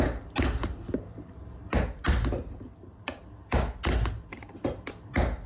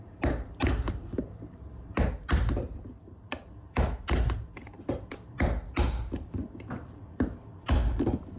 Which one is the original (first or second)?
first